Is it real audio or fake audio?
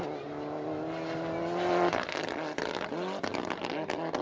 real